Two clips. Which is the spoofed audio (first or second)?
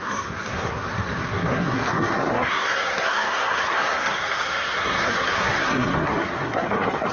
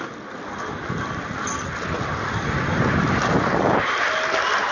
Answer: first